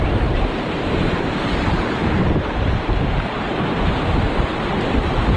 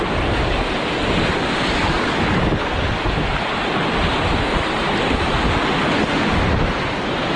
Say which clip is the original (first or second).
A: second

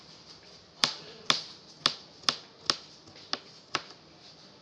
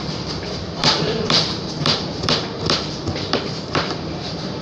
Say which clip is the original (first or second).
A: first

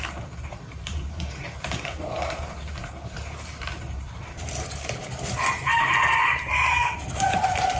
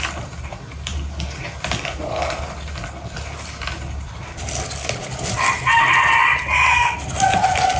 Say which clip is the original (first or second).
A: second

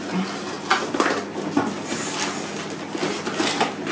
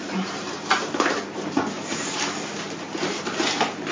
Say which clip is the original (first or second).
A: first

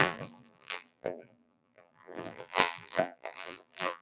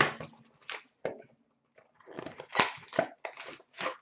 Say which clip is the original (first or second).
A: second